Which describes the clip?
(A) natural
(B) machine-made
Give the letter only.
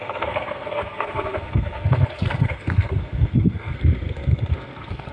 B